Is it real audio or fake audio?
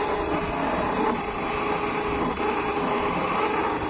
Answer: real